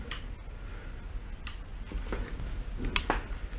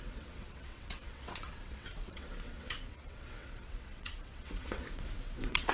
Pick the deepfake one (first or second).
second